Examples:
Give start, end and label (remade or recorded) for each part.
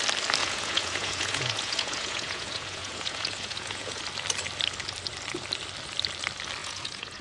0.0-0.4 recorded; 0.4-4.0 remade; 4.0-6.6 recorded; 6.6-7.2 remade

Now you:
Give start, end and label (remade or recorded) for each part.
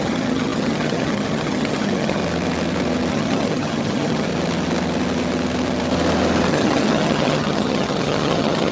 0.0-2.2 remade; 2.2-3.1 recorded; 3.1-4.3 remade; 4.3-6.5 recorded; 6.5-8.7 remade